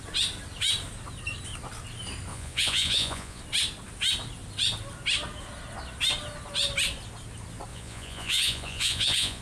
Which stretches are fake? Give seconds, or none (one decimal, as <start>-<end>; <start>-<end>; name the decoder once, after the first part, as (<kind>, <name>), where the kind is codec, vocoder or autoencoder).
2.3-3.4 (vocoder, Vocos); 7.7-9.4